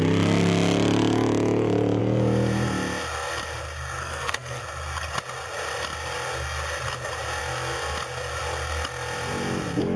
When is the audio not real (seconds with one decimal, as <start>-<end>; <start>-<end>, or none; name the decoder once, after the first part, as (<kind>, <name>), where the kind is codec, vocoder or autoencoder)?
4.0-4.6 (codec, SNAC)